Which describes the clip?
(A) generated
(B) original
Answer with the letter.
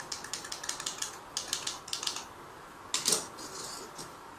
B